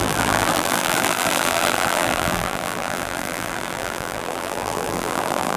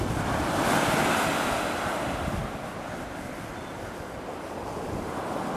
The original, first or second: second